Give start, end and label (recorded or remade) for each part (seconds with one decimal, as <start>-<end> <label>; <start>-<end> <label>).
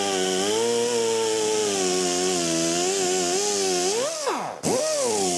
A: 0.0-5.4 recorded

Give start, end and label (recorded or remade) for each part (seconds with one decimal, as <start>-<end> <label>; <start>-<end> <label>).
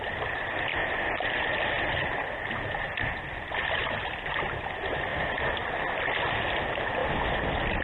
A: 0.0-0.7 remade; 0.7-3.3 recorded; 3.3-7.0 remade; 7.0-7.8 recorded